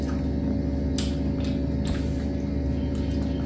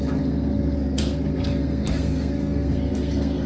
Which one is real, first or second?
first